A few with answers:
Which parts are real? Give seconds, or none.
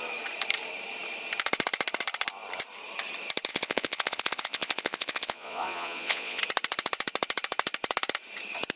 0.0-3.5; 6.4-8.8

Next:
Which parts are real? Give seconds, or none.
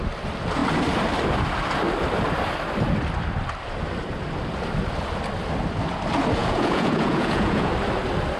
0.0-6.4; 7.7-8.4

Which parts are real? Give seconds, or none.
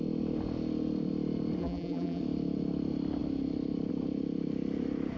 0.0-1.6; 2.2-5.2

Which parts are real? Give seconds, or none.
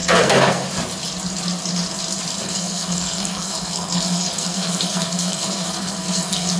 0.7-2.3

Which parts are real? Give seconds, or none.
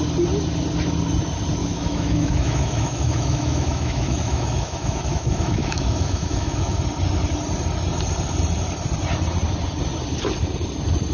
0.0-1.6; 6.8-11.1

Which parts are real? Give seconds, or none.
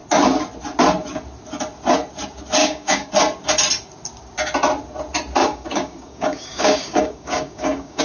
0.0-2.6; 3.1-5.4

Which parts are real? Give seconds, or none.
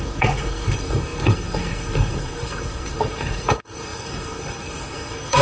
none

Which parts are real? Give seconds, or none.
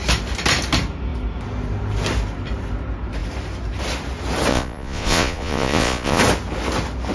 0.0-4.5; 6.2-7.1